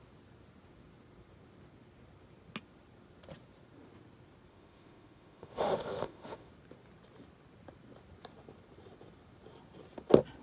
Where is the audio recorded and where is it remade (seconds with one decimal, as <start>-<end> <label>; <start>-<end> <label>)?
0.0-4.5 recorded; 4.5-6.5 remade; 6.5-10.4 recorded